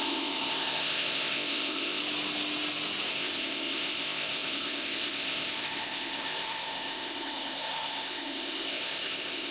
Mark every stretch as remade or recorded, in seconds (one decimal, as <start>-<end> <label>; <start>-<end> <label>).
0.0-2.0 remade; 2.0-3.1 recorded; 3.1-9.5 remade